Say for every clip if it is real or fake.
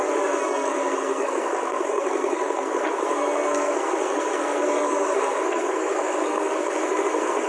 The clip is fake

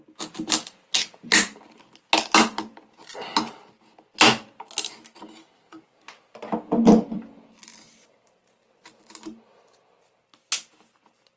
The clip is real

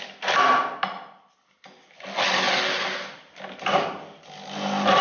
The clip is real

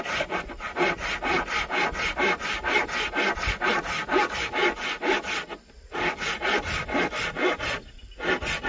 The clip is real